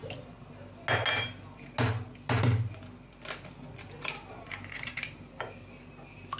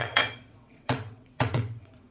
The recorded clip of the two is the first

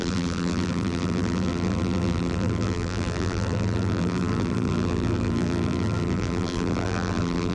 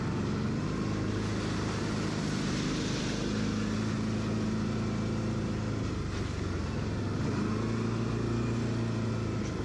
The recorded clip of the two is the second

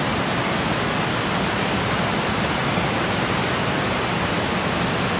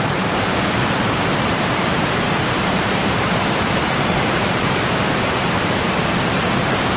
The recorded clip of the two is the first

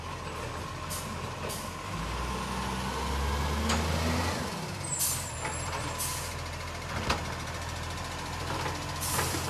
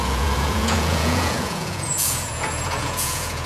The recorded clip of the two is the first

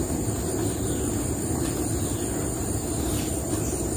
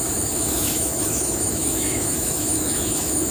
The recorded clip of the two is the first